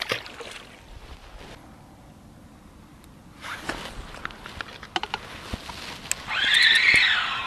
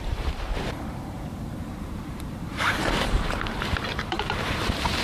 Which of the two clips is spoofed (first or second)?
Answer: second